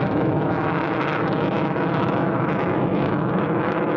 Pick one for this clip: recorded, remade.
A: remade